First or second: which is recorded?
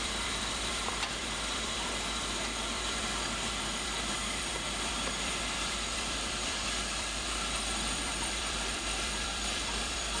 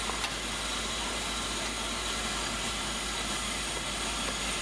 second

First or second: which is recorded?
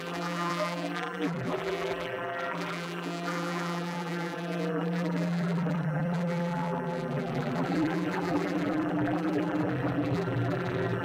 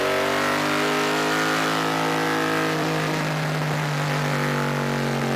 second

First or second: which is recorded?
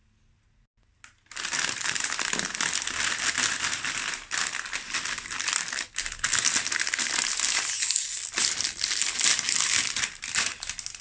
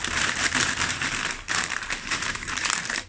first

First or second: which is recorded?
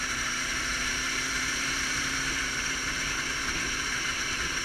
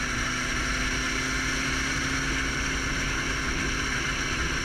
second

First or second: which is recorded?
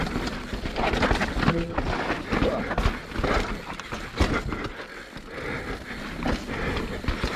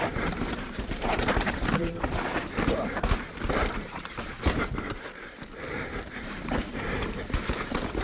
first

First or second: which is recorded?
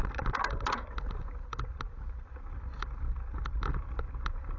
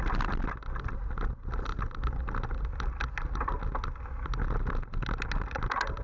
second